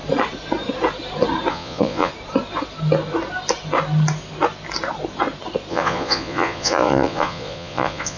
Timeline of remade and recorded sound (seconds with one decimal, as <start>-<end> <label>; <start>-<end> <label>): 0.0-1.5 recorded; 1.5-2.1 remade; 2.1-5.7 recorded; 5.7-8.2 remade